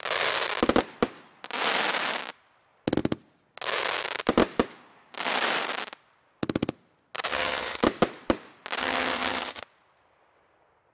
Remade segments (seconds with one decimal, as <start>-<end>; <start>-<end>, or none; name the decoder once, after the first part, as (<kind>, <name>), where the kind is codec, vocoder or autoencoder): 7.3-7.8 (vocoder, HiFi-GAN); 8.8-9.6

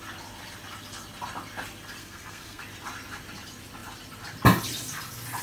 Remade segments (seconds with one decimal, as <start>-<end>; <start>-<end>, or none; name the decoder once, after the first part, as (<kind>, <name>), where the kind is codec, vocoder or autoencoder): 2.0-2.6 (codec, SNAC)